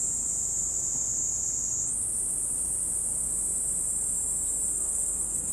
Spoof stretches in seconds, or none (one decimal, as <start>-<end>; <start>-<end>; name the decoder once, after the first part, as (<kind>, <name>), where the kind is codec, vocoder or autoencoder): 4.7-5.5 (codec, SNAC)